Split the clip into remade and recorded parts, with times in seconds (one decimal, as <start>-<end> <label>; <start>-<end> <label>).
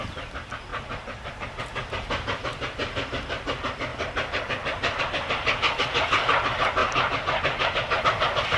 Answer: 0.0-8.6 recorded